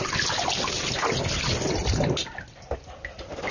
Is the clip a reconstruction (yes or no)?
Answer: no